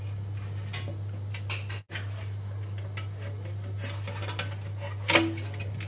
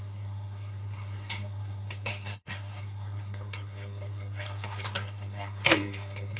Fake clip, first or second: second